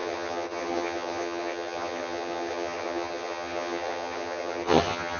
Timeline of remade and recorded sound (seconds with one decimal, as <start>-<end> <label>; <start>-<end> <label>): 0.0-5.2 remade